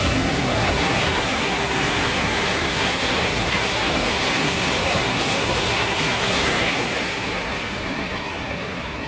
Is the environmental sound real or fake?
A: fake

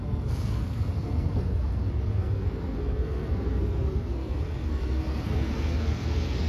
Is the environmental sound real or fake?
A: fake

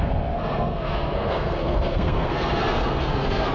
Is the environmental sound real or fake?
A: fake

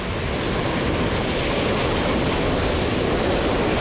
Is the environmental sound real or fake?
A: real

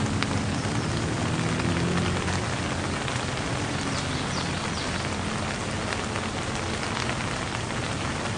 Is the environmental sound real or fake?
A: real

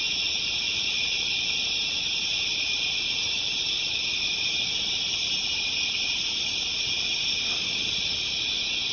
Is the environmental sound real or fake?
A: real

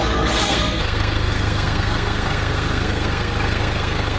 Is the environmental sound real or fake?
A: fake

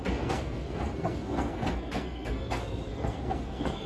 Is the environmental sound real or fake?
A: fake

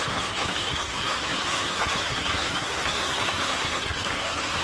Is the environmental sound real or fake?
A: fake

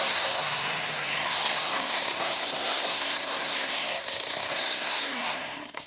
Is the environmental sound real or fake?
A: fake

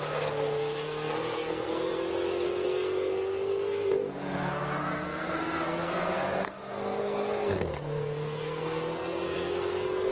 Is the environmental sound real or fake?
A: fake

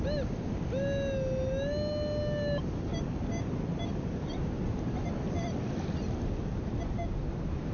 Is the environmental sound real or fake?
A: real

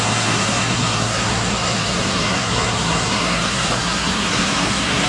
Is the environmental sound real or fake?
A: fake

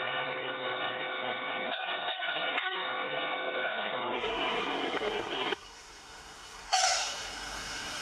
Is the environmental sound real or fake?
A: fake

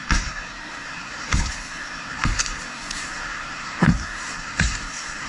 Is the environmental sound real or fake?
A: fake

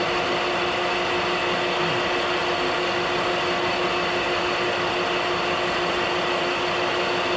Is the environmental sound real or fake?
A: real